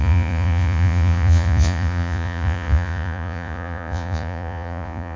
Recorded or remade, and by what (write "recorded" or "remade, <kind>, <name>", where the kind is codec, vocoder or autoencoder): remade, vocoder, Vocos